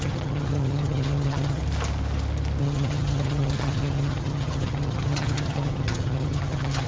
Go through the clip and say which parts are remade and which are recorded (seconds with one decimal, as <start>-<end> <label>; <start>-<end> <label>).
0.0-1.6 remade; 1.6-2.6 recorded; 2.6-6.9 remade